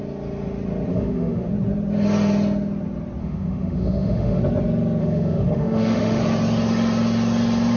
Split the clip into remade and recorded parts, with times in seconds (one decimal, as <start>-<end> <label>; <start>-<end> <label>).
0.0-0.9 recorded; 0.9-1.5 remade; 1.5-3.2 recorded; 3.2-4.4 remade; 4.4-5.0 recorded; 5.0-6.2 remade; 6.2-7.8 recorded